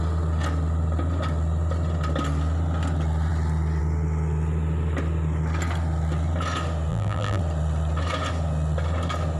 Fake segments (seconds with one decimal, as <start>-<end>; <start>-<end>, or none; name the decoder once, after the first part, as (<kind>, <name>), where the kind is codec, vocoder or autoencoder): 6.9-7.4 (vocoder, BigVGAN v2)